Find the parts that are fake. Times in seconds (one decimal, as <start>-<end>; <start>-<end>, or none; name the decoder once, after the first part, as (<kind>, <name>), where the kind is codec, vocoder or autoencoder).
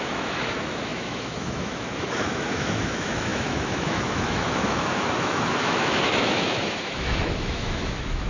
0.0-8.3 (autoencoder, DAC-VAE)